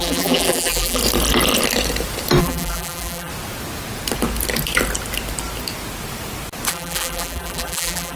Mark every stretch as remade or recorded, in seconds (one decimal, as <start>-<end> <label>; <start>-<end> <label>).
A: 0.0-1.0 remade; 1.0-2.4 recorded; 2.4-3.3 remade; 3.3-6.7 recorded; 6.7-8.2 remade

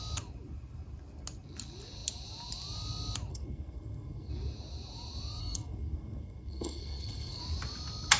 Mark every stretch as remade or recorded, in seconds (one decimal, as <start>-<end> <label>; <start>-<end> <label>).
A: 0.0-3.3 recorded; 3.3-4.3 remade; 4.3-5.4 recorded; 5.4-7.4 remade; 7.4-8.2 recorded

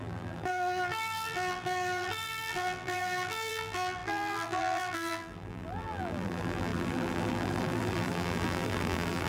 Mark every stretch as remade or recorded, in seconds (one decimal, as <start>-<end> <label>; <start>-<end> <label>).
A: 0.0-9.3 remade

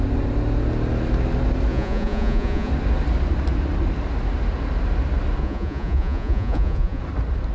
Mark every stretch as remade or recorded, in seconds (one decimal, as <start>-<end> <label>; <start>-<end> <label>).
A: 0.0-1.7 recorded; 1.7-2.7 remade; 2.7-5.4 recorded; 5.4-7.0 remade; 7.0-7.5 recorded

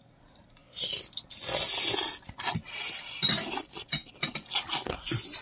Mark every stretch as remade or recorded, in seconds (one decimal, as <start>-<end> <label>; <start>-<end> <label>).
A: 0.0-5.4 recorded